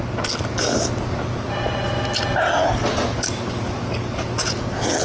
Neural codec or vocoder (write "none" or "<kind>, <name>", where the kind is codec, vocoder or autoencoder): none